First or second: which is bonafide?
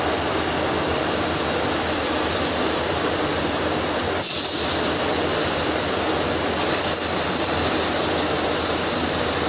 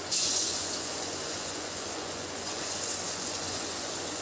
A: first